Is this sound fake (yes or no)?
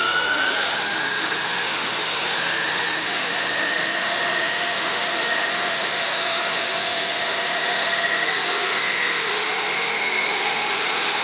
yes